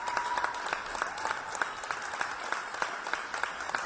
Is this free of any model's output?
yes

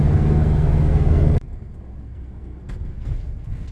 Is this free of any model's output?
no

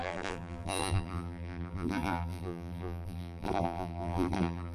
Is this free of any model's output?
no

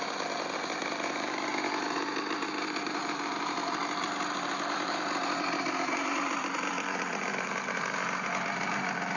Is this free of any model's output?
no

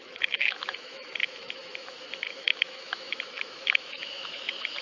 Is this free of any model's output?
no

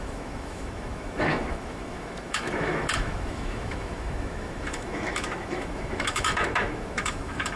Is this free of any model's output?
no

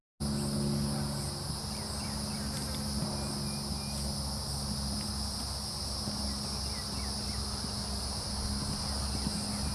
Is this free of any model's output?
yes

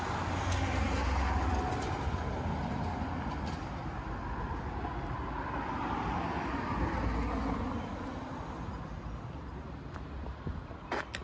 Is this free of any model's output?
yes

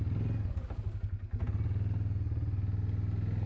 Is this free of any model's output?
yes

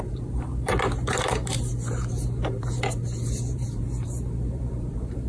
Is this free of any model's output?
no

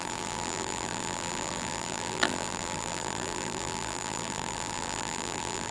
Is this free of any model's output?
no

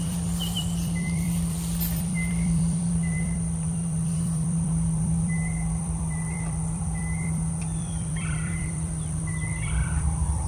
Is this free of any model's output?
no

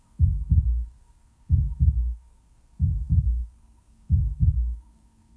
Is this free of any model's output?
no